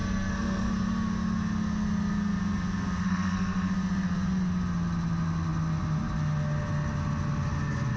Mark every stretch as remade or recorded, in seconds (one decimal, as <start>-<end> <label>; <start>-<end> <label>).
0.0-0.7 remade; 0.7-3.0 recorded; 3.0-3.7 remade; 3.7-8.0 recorded